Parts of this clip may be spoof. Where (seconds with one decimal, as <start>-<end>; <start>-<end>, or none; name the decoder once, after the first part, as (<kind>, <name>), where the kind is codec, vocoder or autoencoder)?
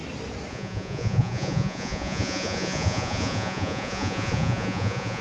0.5-5.2 (vocoder, Vocos)